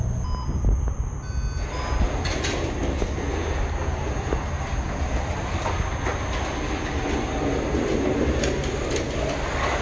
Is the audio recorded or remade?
recorded